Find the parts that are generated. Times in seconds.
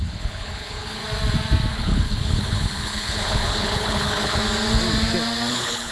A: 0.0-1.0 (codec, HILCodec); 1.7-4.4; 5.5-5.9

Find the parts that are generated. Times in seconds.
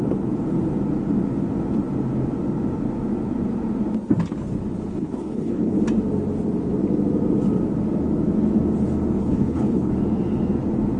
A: 4.9-5.8 (codec, HILCodec); 9.2-9.9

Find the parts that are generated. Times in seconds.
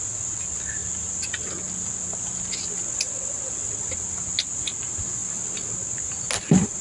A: none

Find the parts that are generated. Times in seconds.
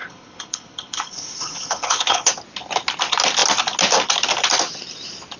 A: 0.0-2.3 (codec, HILCodec)